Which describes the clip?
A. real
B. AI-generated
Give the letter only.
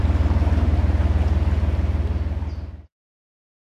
A